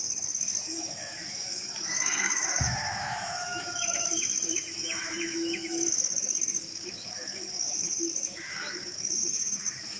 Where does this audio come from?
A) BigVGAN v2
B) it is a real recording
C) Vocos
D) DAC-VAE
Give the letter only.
D